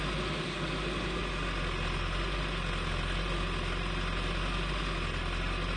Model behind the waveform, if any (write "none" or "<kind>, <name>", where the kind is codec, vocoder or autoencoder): none